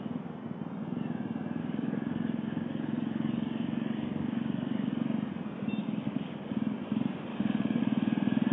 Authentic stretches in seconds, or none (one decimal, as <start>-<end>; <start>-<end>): 0.0-1.6; 4.9-5.8; 6.5-7.3; 7.8-8.5

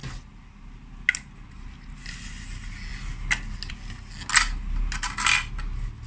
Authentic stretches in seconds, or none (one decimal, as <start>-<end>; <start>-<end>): 0.0-6.1

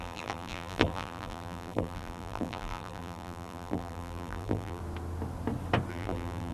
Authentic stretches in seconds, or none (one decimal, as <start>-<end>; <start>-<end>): 4.8-5.9